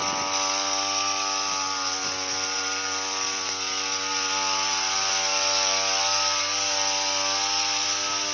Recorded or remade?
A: recorded